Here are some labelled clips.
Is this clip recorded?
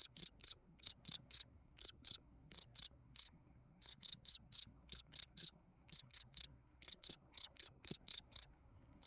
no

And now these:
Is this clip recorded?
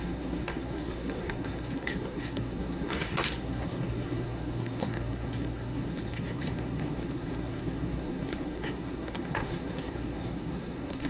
no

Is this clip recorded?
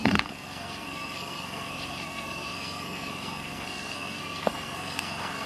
no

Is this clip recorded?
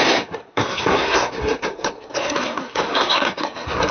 no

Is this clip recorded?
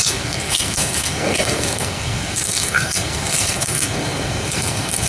no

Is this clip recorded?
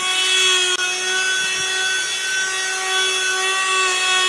yes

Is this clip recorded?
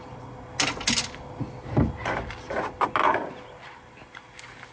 yes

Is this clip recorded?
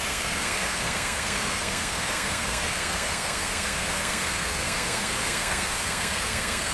no